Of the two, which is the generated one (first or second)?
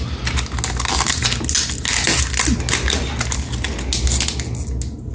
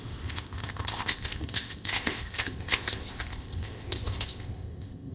second